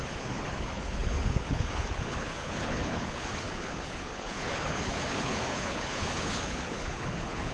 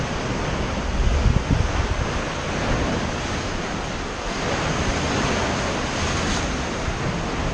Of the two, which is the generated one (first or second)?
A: first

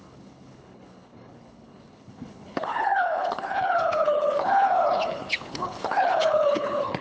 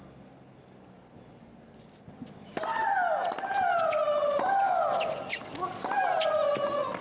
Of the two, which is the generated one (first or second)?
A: first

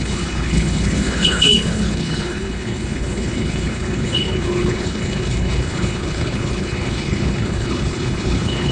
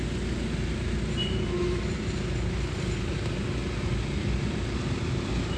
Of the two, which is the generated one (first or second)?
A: first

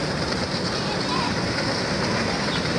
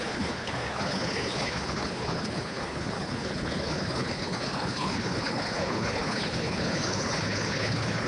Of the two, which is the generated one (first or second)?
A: second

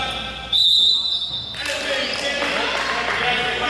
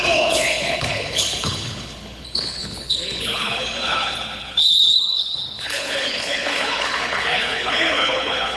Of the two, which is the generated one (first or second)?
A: second